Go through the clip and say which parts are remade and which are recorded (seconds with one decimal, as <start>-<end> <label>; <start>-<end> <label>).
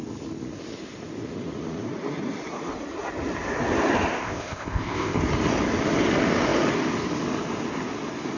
0.0-4.1 recorded; 4.1-5.2 remade; 5.2-8.4 recorded